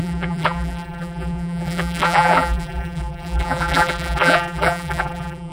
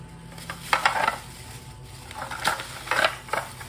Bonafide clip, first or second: second